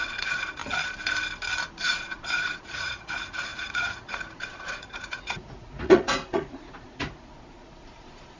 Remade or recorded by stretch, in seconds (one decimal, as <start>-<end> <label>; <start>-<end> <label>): 0.0-0.6 remade; 0.6-1.7 recorded; 1.7-8.4 remade